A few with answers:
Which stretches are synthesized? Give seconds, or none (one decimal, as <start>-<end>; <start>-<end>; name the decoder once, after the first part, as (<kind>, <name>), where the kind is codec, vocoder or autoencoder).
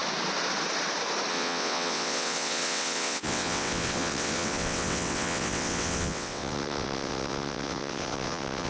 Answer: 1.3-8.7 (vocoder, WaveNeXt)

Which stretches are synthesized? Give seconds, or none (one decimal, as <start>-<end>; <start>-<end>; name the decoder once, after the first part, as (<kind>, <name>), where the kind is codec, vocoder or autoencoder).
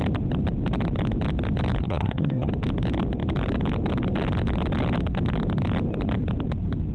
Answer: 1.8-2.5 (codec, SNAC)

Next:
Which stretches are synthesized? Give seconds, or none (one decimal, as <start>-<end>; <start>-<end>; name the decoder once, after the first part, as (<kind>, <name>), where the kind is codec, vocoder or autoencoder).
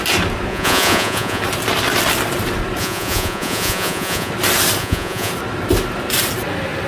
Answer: 0.5-1.4 (vocoder, Vocos); 2.8-4.3; 4.8-5.3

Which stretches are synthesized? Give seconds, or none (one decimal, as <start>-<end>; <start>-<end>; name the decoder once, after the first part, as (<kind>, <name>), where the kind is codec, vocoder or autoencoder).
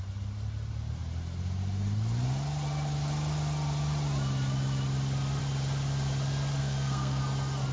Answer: 6.6-7.2 (codec, SNAC)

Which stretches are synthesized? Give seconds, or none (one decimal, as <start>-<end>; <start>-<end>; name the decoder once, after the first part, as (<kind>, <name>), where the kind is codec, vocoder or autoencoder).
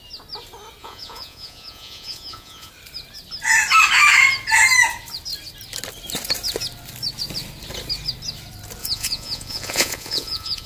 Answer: 0.8-2.7 (vocoder, Vocos); 8.8-10.7